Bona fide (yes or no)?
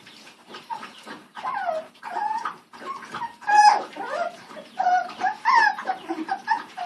no